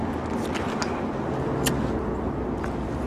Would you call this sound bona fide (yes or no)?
yes